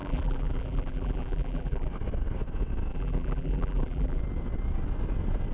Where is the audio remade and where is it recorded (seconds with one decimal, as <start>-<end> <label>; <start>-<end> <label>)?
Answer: 0.0-1.9 remade; 1.9-2.9 recorded; 2.9-4.2 remade; 4.2-5.5 recorded